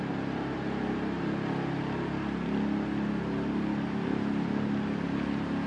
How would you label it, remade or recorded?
recorded